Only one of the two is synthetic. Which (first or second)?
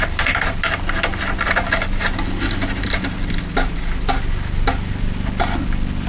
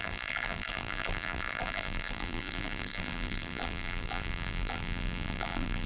second